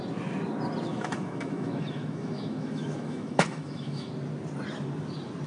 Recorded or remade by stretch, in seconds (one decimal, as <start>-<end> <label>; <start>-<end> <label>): 0.0-0.9 recorded; 0.9-4.1 remade; 4.1-5.5 recorded